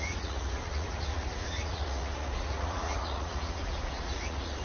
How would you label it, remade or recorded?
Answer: remade